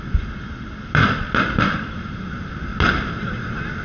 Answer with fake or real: real